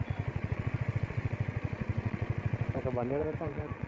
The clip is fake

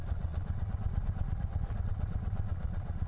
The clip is fake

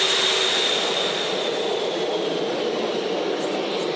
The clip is real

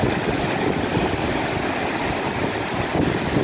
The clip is real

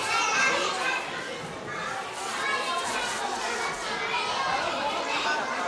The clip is real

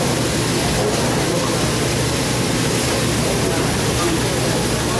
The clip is fake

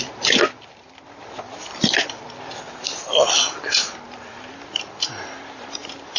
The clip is real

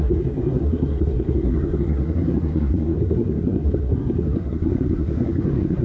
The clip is fake